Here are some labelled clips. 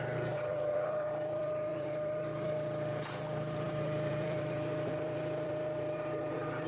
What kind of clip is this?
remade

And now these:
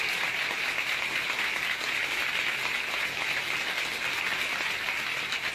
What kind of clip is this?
recorded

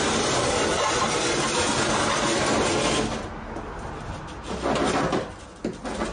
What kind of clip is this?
recorded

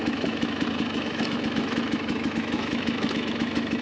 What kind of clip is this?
remade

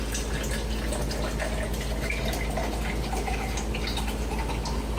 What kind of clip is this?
recorded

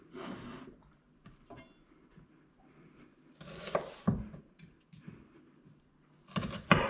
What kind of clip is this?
recorded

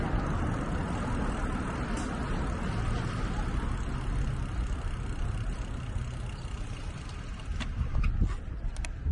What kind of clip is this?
recorded